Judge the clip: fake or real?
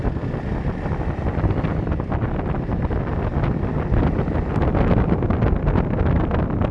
real